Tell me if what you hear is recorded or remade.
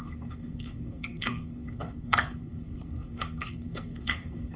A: remade